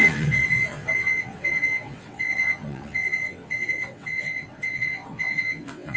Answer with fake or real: fake